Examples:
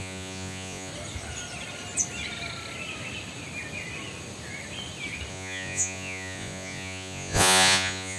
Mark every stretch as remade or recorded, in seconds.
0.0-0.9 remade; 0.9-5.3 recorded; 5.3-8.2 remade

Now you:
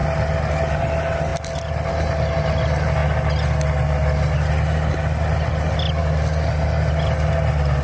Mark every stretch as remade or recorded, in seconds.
0.0-7.8 recorded

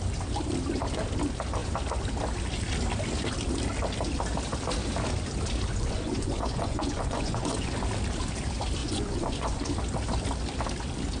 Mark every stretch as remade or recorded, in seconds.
0.0-5.7 recorded; 5.7-7.7 remade; 7.7-8.8 recorded; 8.8-9.7 remade; 9.7-11.2 recorded

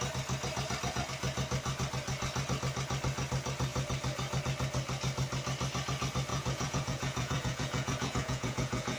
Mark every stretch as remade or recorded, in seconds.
0.0-6.3 recorded; 6.3-9.0 remade

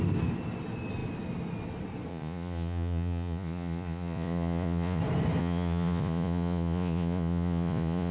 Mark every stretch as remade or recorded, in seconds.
0.0-2.1 recorded; 2.1-5.0 remade; 5.0-5.4 recorded; 5.4-8.1 remade